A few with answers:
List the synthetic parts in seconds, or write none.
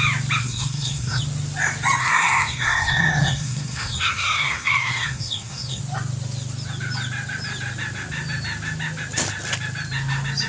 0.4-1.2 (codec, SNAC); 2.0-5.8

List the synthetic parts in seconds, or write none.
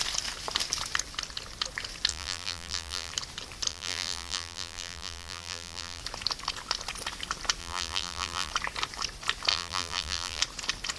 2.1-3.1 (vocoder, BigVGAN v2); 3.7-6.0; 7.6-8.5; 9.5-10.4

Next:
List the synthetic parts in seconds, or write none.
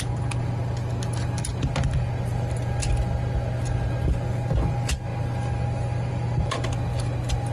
none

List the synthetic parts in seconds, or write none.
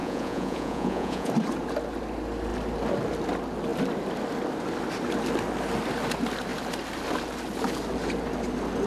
0.0-1.3 (vocoder, Vocos)